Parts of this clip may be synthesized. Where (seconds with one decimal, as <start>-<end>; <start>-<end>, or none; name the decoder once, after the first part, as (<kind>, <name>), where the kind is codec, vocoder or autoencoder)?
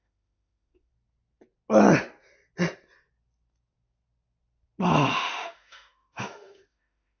0.0-0.9 (autoencoder, DAC-VAE); 5.1-7.2